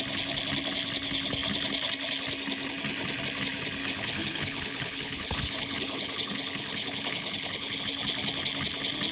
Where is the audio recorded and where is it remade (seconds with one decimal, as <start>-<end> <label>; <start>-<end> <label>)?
0.0-3.8 recorded; 3.8-7.8 remade; 7.8-9.1 recorded